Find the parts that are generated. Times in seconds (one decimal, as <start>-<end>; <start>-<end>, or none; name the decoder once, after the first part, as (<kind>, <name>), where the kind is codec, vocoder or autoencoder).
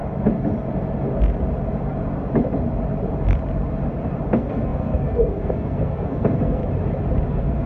4.3-6.6 (codec, SNAC); 7.3-7.7